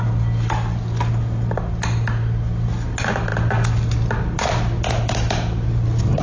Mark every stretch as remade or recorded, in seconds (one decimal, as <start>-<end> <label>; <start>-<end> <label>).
0.0-6.2 recorded